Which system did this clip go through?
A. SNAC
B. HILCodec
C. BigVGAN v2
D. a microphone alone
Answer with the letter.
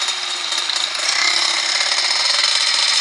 D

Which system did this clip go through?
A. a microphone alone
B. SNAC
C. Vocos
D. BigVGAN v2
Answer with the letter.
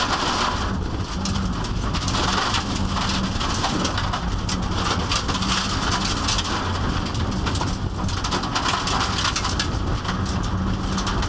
A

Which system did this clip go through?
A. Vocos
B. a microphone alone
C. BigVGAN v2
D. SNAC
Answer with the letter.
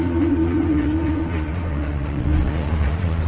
A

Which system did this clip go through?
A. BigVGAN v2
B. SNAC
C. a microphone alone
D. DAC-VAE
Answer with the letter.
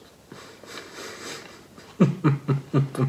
C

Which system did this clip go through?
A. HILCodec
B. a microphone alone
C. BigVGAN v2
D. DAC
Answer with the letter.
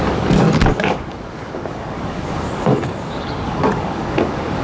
D